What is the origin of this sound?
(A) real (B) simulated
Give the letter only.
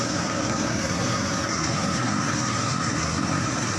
B